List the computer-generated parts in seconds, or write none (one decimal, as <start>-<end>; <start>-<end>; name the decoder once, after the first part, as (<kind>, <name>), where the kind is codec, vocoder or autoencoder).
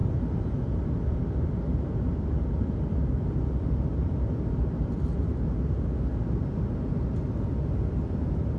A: none